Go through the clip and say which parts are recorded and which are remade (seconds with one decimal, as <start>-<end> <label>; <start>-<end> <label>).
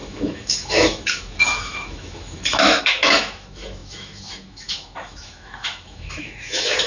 0.0-6.9 remade